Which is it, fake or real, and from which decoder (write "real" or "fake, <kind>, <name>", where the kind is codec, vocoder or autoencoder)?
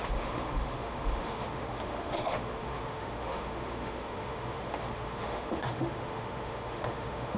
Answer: fake, autoencoder, DAC-VAE